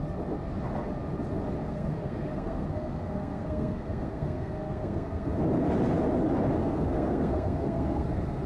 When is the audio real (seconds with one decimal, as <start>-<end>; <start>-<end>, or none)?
0.0-1.6; 5.4-6.6

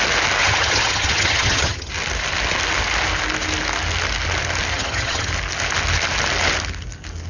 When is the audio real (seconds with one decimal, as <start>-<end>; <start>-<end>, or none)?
0.0-0.4; 1.9-4.7; 5.3-7.3

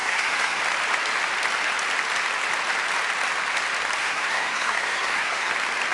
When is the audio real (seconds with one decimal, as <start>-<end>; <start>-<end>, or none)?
0.6-4.0; 5.5-5.9

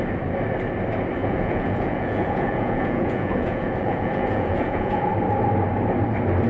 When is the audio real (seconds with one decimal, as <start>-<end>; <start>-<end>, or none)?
0.0-1.2; 5.1-6.5